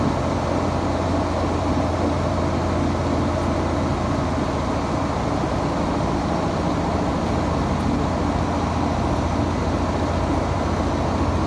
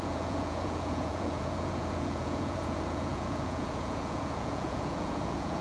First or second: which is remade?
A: second